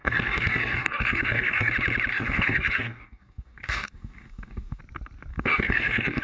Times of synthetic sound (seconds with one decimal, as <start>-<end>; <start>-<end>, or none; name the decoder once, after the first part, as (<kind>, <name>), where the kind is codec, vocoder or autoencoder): 0.0-1.7 (codec, DAC); 2.1-4.8; 5.3-6.2